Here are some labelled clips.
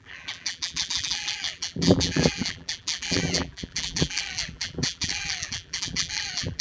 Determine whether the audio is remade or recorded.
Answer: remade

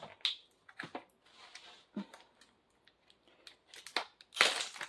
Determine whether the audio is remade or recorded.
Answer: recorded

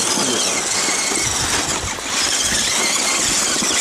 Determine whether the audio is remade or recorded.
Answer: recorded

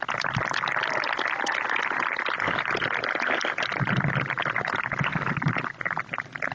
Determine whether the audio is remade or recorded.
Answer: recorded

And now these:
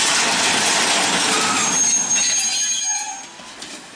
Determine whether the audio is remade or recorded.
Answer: recorded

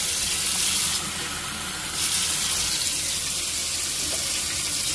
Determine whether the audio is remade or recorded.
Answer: recorded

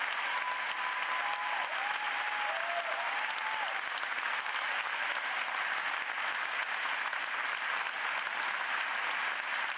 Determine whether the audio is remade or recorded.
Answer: recorded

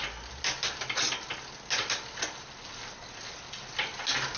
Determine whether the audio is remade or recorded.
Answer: recorded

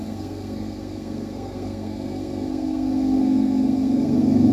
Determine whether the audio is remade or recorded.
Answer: remade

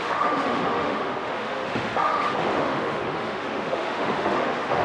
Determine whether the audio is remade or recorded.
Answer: remade